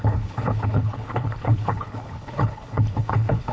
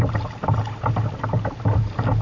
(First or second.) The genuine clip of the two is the second